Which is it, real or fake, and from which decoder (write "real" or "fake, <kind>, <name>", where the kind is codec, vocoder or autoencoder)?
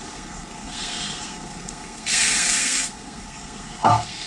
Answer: fake, codec, SNAC